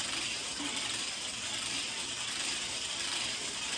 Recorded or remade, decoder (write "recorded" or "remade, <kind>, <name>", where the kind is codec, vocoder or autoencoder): remade, vocoder, BigVGAN v2